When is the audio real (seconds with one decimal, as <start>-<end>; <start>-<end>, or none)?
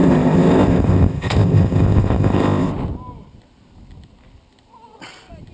2.7-5.5